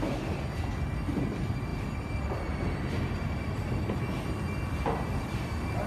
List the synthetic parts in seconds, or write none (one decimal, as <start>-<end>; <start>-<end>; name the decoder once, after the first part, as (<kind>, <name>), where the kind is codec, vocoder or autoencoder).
none